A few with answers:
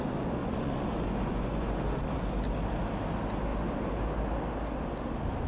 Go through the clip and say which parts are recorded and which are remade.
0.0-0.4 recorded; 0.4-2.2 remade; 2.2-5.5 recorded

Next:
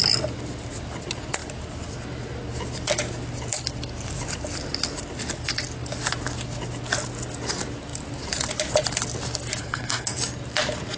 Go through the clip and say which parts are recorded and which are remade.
0.0-9.6 recorded; 9.6-10.2 remade; 10.2-11.0 recorded

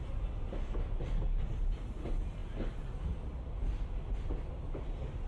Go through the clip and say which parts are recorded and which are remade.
0.0-5.3 recorded

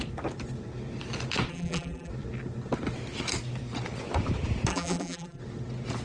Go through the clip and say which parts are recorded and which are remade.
0.0-1.5 recorded; 1.5-2.1 remade; 2.1-4.7 recorded; 4.7-5.4 remade; 5.4-6.0 recorded